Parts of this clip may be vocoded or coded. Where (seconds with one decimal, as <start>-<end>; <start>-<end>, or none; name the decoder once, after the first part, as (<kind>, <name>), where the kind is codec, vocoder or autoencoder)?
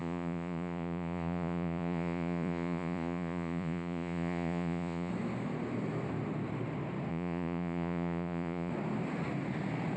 0.0-5.1 (vocoder, Vocos); 7.1-8.7